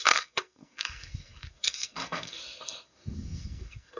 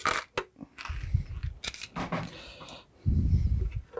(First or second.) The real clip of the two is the second